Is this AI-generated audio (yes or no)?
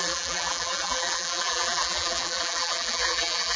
yes